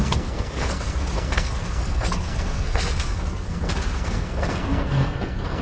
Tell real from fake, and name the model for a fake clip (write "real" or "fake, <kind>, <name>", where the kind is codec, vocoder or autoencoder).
fake, codec, SNAC